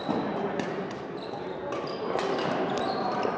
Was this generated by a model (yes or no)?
no